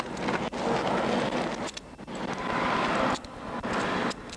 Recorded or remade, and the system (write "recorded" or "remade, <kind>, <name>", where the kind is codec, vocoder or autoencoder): recorded